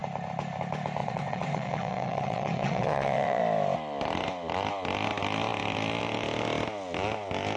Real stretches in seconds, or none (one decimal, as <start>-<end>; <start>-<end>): 0.0-1.0; 3.4-7.6